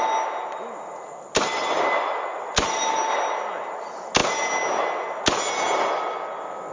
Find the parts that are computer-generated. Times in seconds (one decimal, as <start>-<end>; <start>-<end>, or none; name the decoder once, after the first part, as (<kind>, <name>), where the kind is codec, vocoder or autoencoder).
none